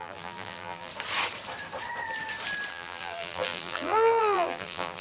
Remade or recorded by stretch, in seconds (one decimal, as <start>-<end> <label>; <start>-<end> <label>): 0.0-0.9 remade; 0.9-2.7 recorded; 2.7-5.0 remade